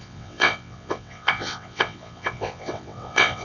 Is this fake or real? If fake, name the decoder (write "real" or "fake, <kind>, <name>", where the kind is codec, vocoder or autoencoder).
fake, vocoder, WaveNeXt